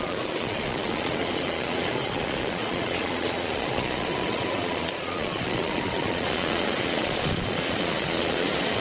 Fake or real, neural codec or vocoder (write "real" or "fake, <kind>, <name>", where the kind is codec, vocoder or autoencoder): fake, vocoder, Vocos